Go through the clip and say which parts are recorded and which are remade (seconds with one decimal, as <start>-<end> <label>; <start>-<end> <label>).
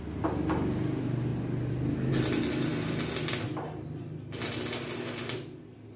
0.0-6.0 recorded